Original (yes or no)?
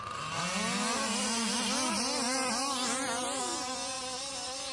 yes